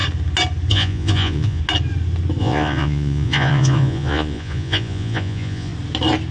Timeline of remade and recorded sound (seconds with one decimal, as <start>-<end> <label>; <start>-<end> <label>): 0.0-0.7 recorded; 0.7-1.6 remade; 1.6-2.4 recorded; 2.4-5.7 remade; 5.7-6.3 recorded